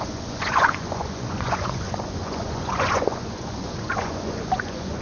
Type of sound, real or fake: fake